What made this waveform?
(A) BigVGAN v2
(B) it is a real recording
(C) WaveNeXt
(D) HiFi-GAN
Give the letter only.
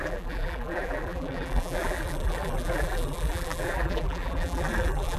A